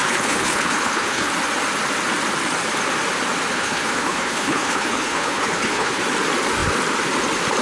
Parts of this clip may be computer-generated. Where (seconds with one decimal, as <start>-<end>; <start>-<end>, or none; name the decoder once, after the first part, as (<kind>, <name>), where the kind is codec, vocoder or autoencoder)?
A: 0.0-1.3 (codec, HILCodec); 3.5-6.0